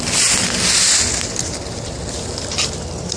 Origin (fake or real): real